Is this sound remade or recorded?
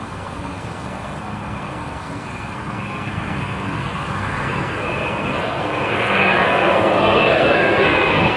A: remade